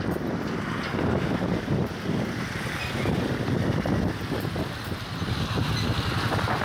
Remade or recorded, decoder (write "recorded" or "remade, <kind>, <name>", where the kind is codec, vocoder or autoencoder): recorded